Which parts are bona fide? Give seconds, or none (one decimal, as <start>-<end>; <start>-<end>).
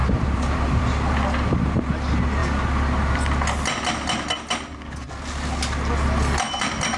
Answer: 0.8-7.0